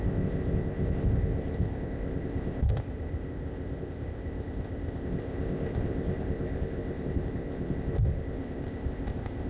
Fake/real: fake